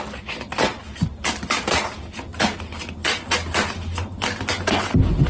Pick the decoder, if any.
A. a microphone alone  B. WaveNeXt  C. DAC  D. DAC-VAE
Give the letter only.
A